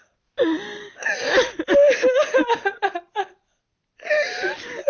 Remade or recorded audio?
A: recorded